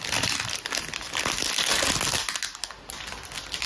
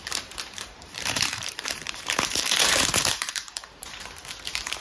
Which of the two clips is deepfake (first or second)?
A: second